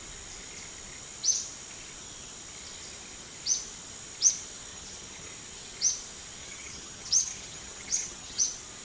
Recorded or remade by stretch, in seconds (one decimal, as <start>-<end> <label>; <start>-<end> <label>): 0.0-4.7 recorded; 4.7-5.3 remade; 5.3-6.4 recorded; 6.4-8.4 remade; 8.4-8.8 recorded